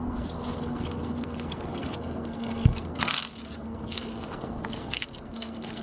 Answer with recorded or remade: remade